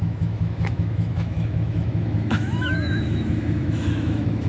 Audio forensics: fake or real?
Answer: fake